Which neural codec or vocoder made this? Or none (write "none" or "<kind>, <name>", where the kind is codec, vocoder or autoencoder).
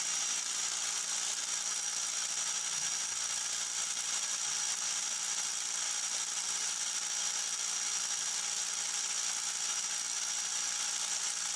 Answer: none